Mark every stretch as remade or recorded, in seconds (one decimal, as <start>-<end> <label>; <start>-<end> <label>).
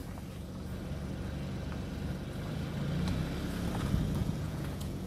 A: 0.0-4.2 recorded; 4.2-5.1 remade